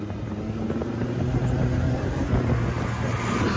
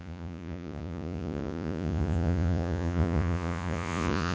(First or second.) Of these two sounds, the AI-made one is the second